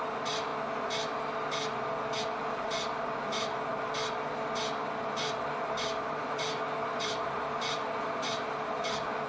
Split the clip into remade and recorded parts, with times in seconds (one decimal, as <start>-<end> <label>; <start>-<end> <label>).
0.0-0.5 remade; 0.5-2.2 recorded; 2.2-3.7 remade; 3.7-5.4 recorded; 5.4-9.3 remade

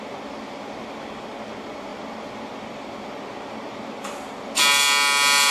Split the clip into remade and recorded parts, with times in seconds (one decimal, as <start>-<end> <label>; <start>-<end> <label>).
0.0-5.5 recorded

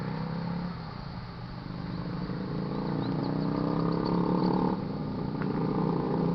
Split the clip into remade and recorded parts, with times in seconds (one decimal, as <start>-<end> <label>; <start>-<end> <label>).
0.0-5.0 recorded; 5.0-5.7 remade; 5.7-6.3 recorded

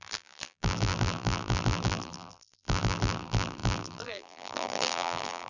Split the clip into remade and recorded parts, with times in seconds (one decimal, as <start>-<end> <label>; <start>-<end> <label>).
0.0-5.5 remade

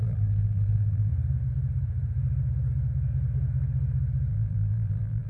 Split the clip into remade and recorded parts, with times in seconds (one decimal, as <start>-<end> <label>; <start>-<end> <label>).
0.0-1.1 remade; 1.1-4.3 recorded; 4.3-5.3 remade

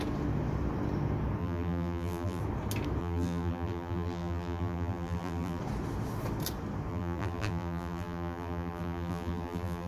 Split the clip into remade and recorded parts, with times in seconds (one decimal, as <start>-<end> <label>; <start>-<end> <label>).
0.0-1.4 recorded; 1.4-2.4 remade; 2.4-3.0 recorded; 3.0-5.6 remade; 5.6-6.9 recorded; 6.9-9.9 remade